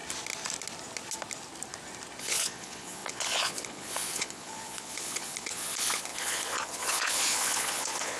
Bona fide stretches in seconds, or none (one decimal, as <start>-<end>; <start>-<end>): 0.0-2.2